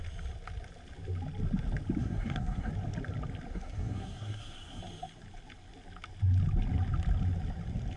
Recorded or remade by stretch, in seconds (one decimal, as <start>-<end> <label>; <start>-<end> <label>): 0.0-2.0 recorded; 2.0-2.7 remade; 2.7-3.5 recorded; 3.5-4.8 remade; 4.8-8.0 recorded